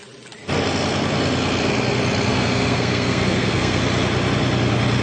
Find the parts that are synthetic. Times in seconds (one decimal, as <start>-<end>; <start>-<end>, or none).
2.3-3.8